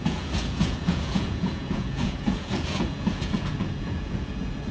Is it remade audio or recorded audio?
remade